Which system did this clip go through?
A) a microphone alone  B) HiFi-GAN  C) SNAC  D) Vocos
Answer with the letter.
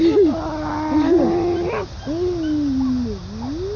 A